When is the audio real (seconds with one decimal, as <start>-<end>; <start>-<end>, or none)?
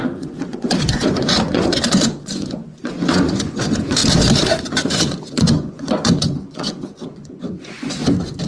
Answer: 4.0-4.5; 8.0-8.5